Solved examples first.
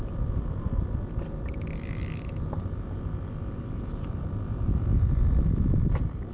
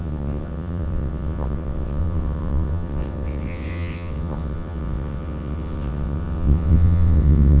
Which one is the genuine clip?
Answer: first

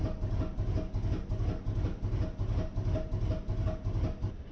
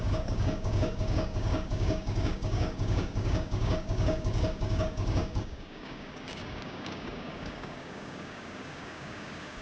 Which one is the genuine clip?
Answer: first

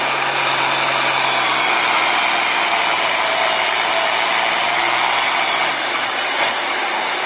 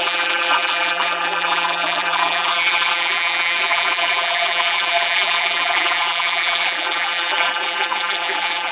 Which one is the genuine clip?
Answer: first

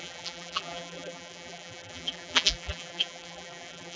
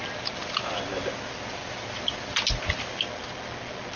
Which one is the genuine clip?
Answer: second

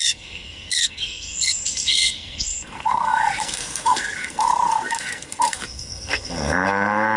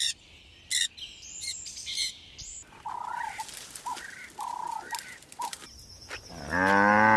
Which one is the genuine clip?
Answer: second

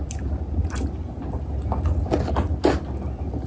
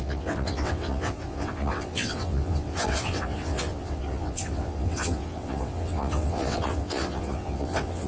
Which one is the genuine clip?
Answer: first